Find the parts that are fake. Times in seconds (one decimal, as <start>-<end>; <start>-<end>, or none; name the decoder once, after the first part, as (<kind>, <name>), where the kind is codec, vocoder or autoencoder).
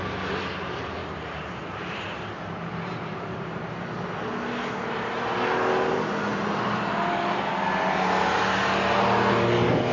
1.0-3.8 (vocoder, BigVGAN v2); 6.3-7.5